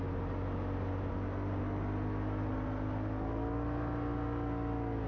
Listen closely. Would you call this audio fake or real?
real